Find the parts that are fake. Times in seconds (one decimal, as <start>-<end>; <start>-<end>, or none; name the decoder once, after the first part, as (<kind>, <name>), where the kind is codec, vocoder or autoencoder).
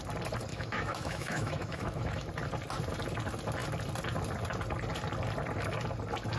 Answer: 0.5-2.3 (autoencoder, DAC-VAE)